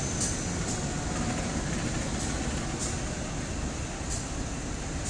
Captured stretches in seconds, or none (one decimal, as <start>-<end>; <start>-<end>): 0.0-5.1